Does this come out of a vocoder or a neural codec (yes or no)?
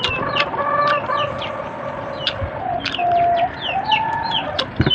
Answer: no